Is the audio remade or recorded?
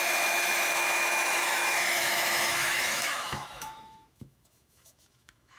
remade